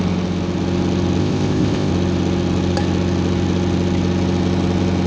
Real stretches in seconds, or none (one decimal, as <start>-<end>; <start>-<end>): 0.0-1.2; 1.9-5.1